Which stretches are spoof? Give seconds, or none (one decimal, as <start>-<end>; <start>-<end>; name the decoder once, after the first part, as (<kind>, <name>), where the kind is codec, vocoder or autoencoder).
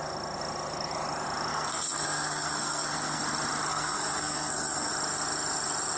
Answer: 1.5-3.2 (codec, SNAC); 3.7-4.9